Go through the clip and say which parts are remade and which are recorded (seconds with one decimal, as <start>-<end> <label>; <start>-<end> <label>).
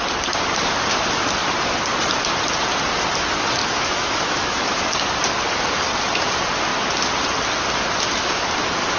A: 0.0-3.6 recorded; 3.6-4.8 remade; 4.8-9.0 recorded